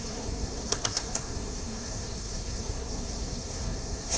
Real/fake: fake